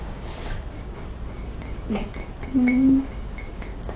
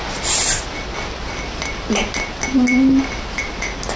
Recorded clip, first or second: second